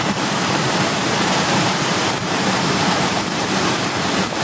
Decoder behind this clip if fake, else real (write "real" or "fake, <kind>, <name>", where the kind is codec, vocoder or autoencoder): fake, vocoder, BigVGAN v2